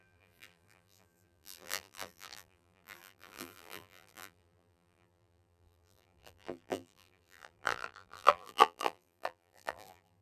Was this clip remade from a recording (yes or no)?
yes